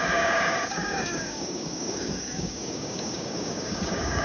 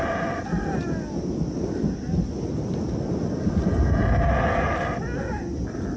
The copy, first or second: first